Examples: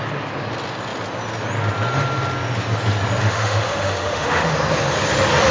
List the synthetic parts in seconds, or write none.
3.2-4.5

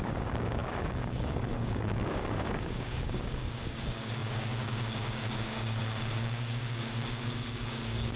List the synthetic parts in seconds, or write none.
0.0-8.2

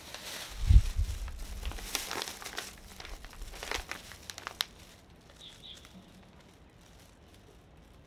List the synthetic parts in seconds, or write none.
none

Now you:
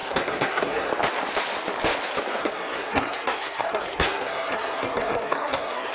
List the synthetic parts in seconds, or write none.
0.0-0.9; 2.4-5.9

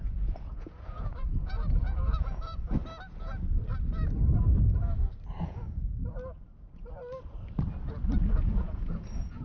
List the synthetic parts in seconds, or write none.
0.0-2.8; 5.4-6.0; 8.4-9.4

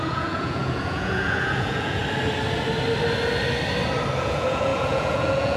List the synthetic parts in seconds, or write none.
0.0-2.0; 4.2-5.6

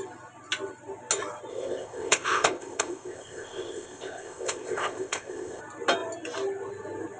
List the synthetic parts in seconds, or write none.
1.5-5.6

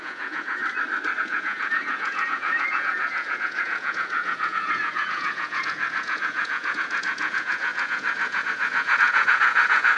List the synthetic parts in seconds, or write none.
0.0-0.6; 1.2-10.0